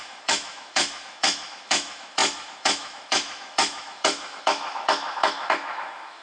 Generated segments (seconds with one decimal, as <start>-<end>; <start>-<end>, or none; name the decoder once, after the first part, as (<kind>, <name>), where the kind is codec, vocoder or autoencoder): 0.0-6.2 (autoencoder, DAC-VAE)